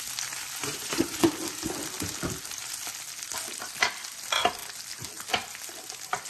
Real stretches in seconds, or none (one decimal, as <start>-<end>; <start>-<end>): 0.0-0.6; 1.3-6.3